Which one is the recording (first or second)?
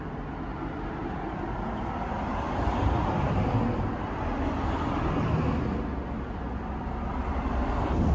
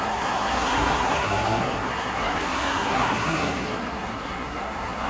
first